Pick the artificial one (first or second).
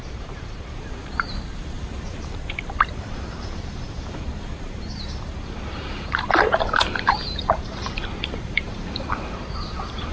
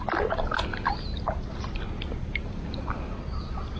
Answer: first